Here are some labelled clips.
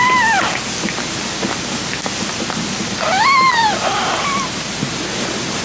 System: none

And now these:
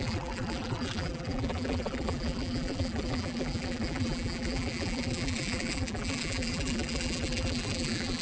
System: vocoder, BigVGAN v2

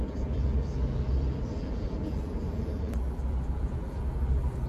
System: vocoder, BigVGAN v2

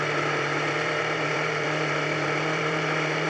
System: vocoder, BigVGAN v2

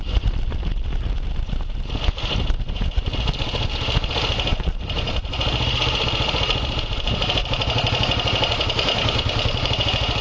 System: vocoder, BigVGAN v2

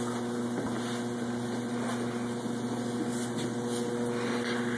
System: none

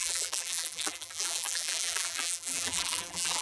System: vocoder, BigVGAN v2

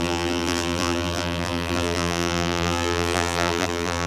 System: vocoder, BigVGAN v2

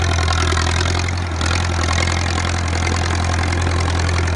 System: none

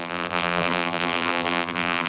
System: vocoder, BigVGAN v2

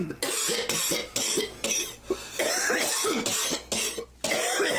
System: none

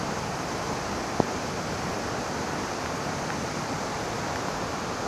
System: none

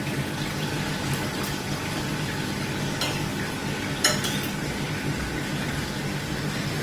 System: none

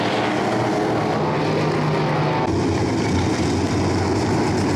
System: none